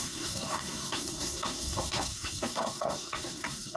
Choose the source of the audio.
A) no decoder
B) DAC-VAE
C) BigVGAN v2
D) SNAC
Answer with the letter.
D